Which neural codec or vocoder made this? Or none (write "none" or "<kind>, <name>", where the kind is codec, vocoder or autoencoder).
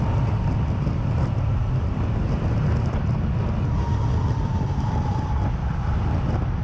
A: none